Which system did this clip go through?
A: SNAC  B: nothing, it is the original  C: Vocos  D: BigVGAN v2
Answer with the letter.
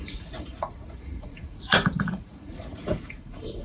C